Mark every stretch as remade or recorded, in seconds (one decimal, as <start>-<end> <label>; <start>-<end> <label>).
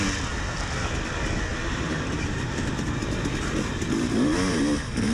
0.0-1.5 recorded; 1.5-4.6 remade; 4.6-5.1 recorded